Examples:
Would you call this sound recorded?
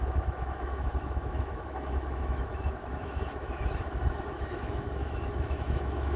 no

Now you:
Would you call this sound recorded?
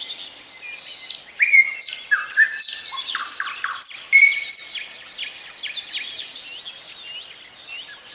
yes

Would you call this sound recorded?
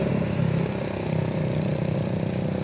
yes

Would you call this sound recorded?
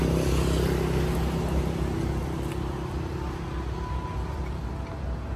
yes